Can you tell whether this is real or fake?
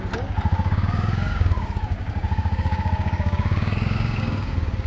fake